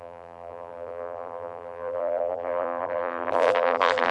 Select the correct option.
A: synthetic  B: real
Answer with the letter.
A